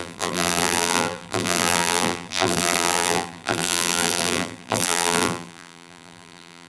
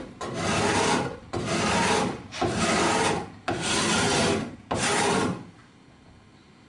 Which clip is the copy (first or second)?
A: first